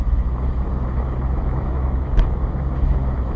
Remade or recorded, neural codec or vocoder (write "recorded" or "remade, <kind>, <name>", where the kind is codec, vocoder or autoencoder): remade, autoencoder, DAC-VAE